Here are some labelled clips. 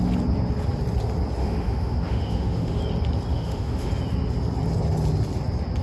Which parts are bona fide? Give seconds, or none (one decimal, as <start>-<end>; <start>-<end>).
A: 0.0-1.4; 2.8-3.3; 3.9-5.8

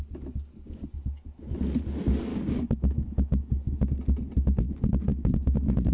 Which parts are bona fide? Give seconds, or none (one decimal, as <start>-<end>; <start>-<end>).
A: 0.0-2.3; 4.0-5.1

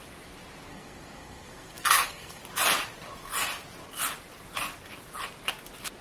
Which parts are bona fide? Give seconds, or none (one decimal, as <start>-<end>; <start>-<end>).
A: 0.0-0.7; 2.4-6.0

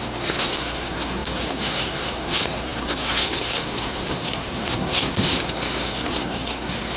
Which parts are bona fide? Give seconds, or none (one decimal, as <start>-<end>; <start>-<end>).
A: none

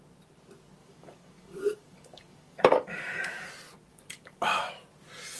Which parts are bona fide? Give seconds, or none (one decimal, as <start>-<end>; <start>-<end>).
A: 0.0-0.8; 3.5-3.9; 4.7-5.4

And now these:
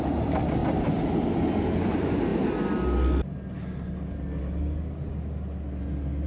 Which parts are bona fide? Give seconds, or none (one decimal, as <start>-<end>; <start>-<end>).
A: 2.3-6.3

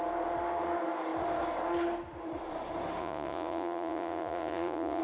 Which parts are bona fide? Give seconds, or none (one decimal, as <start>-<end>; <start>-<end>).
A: 0.0-3.0

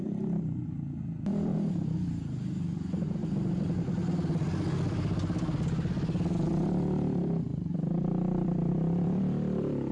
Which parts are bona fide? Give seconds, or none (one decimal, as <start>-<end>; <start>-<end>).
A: 4.0-4.9